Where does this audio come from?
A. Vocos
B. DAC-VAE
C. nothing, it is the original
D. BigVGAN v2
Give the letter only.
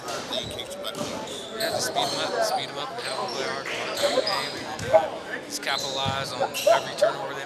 C